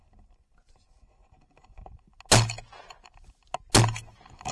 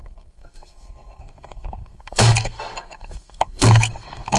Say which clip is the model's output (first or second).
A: second